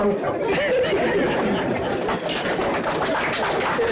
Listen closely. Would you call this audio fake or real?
real